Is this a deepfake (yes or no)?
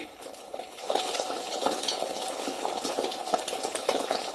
yes